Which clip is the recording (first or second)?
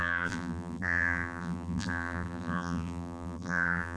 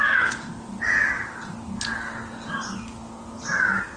second